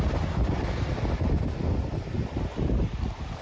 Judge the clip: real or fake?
real